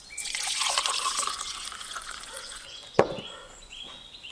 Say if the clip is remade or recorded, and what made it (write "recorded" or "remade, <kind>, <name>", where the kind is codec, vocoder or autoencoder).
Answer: remade, vocoder, Vocos